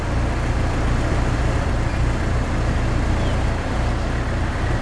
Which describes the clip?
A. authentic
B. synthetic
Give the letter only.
A